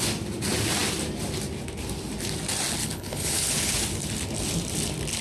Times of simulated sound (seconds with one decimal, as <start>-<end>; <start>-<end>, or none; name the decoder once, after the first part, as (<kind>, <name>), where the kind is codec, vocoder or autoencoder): 2.8-3.7 (codec, HILCodec)